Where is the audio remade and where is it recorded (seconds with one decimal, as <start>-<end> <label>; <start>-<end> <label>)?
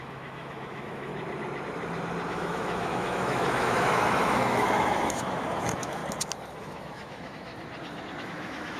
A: 0.0-1.1 remade; 1.1-2.3 recorded; 2.3-6.0 remade; 6.0-6.6 recorded; 6.6-7.5 remade; 7.5-8.2 recorded; 8.2-8.8 remade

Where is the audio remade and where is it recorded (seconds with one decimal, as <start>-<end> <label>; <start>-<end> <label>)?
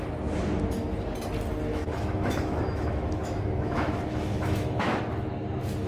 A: 0.0-1.7 recorded; 1.7-5.0 remade; 5.0-5.9 recorded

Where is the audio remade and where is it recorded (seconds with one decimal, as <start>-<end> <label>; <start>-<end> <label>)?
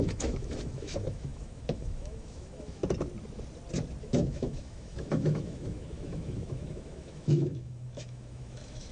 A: 0.0-2.8 remade; 2.8-4.0 recorded; 4.0-8.9 remade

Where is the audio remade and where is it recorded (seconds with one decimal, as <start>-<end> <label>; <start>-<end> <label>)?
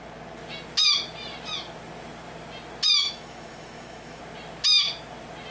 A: 0.0-3.0 recorded; 3.0-4.2 remade; 4.2-5.5 recorded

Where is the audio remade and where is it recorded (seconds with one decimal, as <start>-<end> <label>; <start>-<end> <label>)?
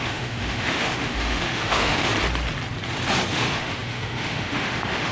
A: 0.0-2.1 remade; 2.1-3.3 recorded; 3.3-5.1 remade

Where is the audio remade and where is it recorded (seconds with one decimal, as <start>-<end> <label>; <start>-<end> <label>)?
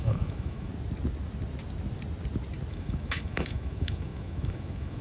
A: 0.0-0.7 remade; 0.7-2.7 recorded; 2.7-5.0 remade